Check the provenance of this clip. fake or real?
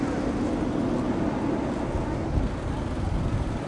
real